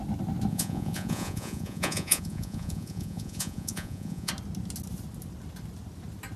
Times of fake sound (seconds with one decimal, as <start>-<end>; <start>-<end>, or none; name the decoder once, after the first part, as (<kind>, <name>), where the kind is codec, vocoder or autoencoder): 0.5-4.3 (vocoder, Vocos)